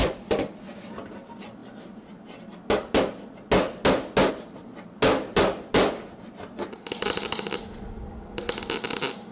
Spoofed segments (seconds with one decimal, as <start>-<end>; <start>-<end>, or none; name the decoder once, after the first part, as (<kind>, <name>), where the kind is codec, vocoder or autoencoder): none